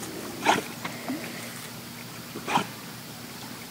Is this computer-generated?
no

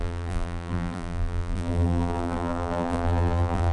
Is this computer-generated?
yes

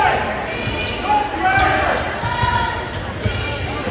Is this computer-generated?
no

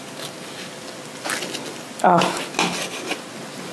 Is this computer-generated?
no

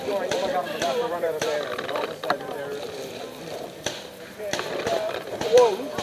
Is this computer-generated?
yes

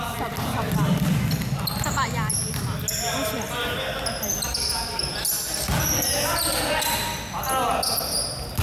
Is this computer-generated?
no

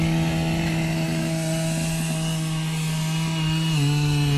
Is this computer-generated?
no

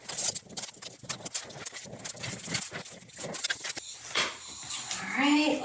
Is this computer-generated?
no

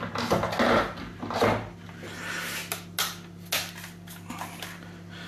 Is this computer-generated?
no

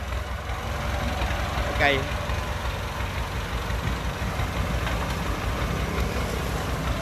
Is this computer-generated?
no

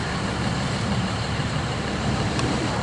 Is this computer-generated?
yes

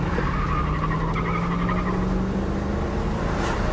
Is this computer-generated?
no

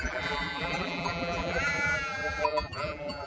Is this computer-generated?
yes